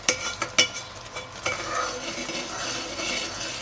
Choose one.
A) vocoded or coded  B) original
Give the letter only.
B